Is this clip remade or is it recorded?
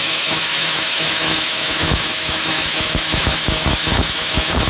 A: remade